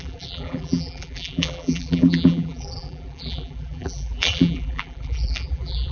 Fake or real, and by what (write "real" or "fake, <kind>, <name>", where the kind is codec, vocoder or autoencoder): fake, vocoder, BigVGAN v2